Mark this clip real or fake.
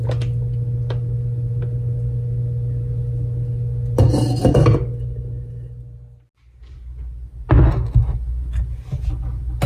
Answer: real